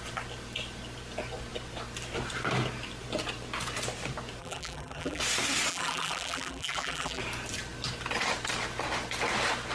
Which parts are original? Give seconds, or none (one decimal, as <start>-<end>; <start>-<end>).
0.0-4.4; 5.2-5.7; 7.2-9.7